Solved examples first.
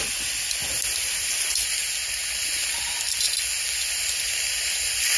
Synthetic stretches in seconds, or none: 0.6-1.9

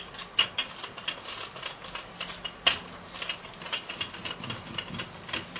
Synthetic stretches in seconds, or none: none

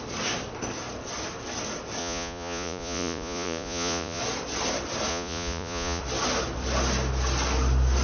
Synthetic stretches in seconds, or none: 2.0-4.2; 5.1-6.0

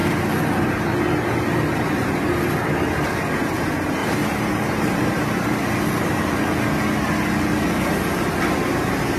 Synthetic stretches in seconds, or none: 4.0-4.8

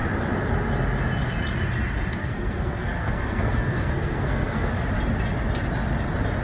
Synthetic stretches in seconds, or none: 2.2-4.7

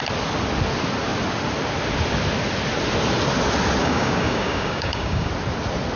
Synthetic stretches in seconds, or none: 3.8-5.3

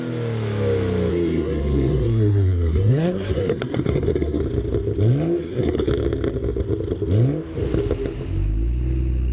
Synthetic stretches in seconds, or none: 1.1-4.4; 5.4-5.9

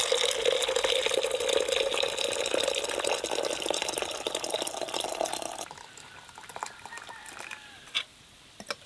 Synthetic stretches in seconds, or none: none